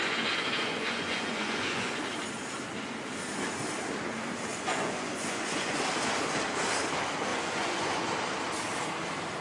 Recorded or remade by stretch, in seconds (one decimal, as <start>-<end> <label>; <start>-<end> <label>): 0.0-2.0 remade; 2.0-4.5 recorded; 4.5-5.8 remade; 5.8-7.3 recorded; 7.3-8.1 remade; 8.1-9.4 recorded

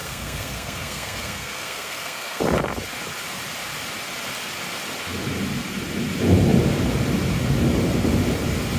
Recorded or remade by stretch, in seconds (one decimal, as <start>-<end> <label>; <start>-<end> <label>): 0.0-2.4 remade; 2.4-8.8 recorded

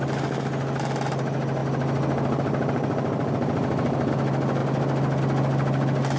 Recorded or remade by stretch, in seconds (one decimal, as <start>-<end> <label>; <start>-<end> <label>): 0.0-6.2 recorded

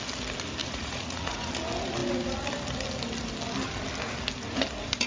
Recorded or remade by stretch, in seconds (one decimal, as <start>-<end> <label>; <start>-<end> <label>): 0.0-0.6 recorded; 0.6-1.5 remade; 1.5-5.1 recorded

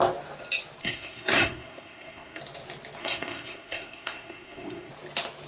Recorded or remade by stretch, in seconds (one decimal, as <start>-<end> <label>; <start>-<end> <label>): 0.0-0.8 recorded; 0.8-2.4 remade; 2.4-3.0 recorded; 3.0-4.9 remade; 4.9-5.5 recorded